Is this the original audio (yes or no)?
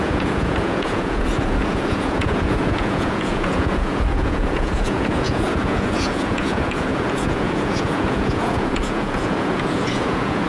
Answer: no